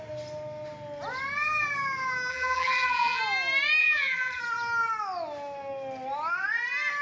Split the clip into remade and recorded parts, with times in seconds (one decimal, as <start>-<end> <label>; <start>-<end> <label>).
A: 0.0-2.3 recorded; 2.3-3.2 remade; 3.2-3.8 recorded; 3.8-4.4 remade; 4.4-7.0 recorded